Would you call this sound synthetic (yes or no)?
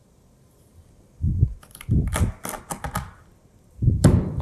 no